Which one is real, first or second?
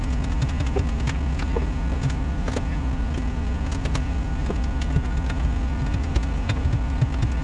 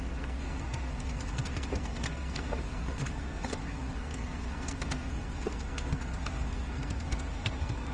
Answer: first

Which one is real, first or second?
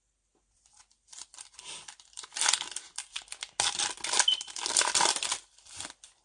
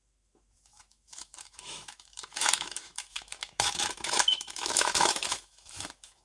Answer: first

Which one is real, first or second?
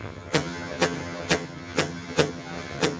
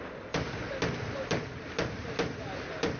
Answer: second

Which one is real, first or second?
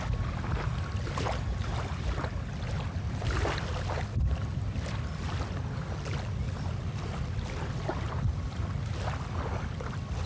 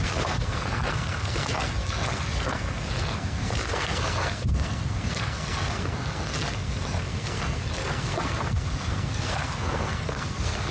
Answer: first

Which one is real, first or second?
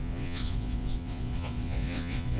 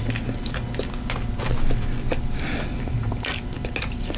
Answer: second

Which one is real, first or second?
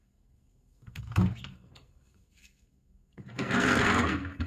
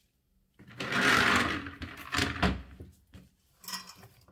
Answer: second